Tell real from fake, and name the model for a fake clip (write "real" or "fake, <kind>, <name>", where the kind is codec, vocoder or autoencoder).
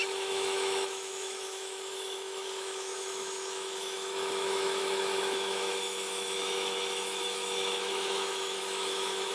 fake, autoencoder, DAC-VAE